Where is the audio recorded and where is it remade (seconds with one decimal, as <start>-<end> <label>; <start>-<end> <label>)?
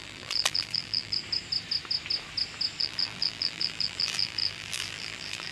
0.0-1.2 remade; 1.2-2.8 recorded; 2.8-5.5 remade